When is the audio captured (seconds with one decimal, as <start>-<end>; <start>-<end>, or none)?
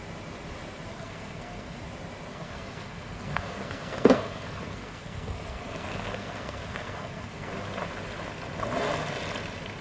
0.0-0.9; 1.8-2.3; 7.5-9.8